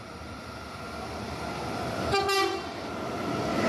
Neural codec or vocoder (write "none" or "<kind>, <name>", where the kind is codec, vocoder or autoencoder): none